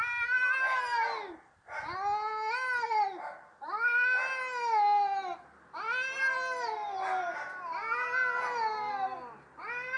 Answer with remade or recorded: recorded